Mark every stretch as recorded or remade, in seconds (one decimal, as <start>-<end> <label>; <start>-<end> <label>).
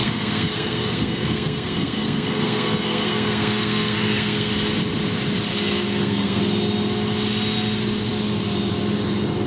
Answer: 0.0-4.5 remade; 4.5-5.5 recorded; 5.5-6.4 remade; 6.4-9.5 recorded